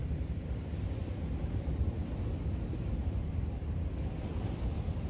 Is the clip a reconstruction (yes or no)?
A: no